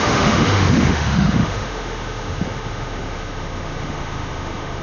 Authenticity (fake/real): fake